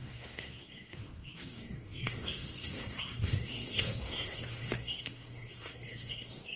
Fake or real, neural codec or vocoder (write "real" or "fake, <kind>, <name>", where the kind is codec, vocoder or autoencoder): fake, codec, SNAC